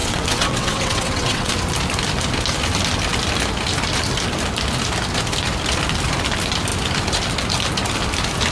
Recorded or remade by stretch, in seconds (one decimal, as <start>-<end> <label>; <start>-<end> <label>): 0.0-1.5 remade; 1.5-8.5 recorded